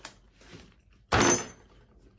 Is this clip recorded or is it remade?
recorded